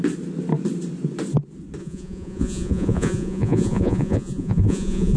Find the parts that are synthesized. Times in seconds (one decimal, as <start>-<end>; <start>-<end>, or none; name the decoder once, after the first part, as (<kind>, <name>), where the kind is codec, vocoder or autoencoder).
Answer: 1.8-5.2 (vocoder, Vocos)